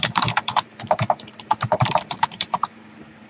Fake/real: fake